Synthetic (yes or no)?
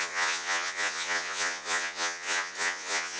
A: yes